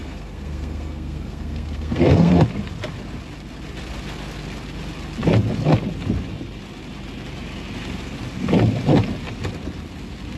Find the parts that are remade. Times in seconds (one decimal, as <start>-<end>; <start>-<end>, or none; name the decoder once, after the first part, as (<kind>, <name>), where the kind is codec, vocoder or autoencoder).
0.0-2.3 (codec, SNAC)